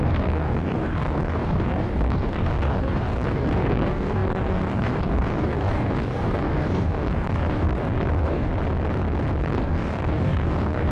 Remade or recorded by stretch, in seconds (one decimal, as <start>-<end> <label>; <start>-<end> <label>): 0.0-8.5 remade; 8.5-9.4 recorded; 9.4-10.9 remade